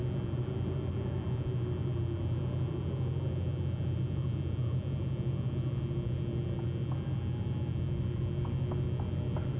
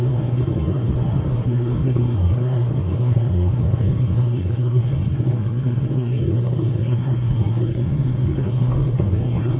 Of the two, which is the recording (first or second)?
first